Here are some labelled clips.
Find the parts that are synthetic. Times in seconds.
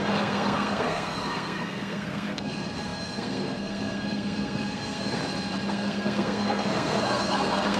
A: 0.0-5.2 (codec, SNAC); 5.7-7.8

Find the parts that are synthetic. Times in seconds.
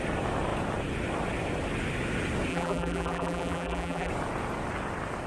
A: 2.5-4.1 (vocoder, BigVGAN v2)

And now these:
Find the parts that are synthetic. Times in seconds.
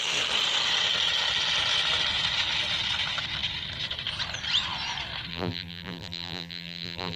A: 5.3-7.2 (vocoder, BigVGAN v2)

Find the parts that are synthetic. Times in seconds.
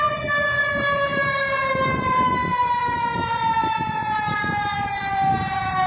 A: none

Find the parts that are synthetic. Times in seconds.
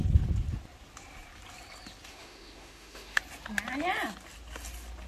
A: 2.1-3.2 (autoencoder, DAC-VAE)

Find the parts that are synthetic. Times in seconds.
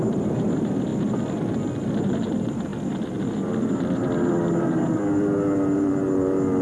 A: none